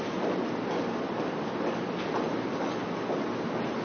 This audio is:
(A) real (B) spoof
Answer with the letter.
A